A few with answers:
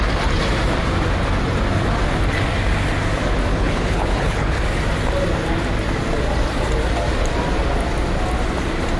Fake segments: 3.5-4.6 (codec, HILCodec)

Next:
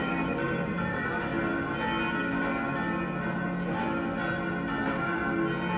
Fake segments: 0.0-1.3 (vocoder, BigVGAN v2); 4.8-5.2

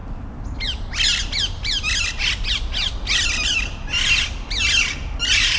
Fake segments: none

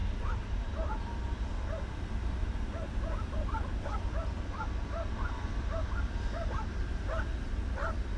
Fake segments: 0.0-8.2 (vocoder, BigVGAN v2)

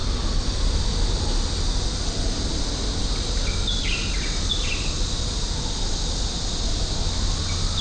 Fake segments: none

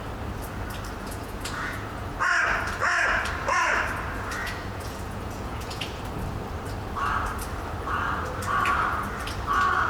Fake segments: 1.0-2.1 (vocoder, Vocos); 4.4-6.0

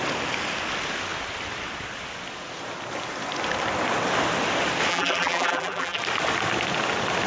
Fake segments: 4.9-6.0 (vocoder, BigVGAN v2)

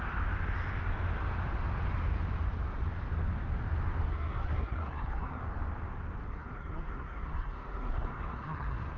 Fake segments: 4.1-5.4 (codec, SNAC); 6.3-9.0